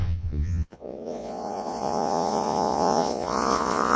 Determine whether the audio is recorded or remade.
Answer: remade